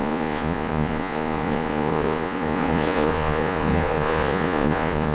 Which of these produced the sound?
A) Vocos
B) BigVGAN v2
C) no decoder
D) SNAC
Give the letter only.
A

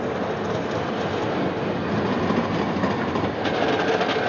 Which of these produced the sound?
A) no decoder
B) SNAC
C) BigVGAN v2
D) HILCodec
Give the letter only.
A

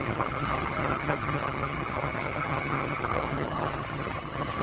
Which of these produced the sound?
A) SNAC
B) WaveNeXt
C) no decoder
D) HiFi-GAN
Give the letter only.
D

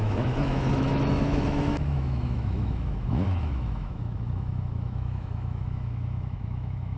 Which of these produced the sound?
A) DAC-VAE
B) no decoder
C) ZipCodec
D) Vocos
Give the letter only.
A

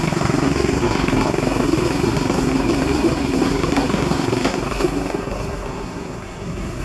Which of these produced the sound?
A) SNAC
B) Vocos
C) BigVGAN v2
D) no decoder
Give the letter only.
A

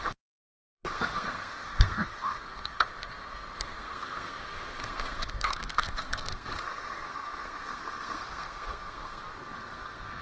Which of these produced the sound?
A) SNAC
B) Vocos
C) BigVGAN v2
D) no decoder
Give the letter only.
A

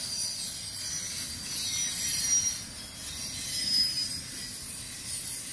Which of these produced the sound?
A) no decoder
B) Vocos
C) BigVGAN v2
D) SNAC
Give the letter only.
A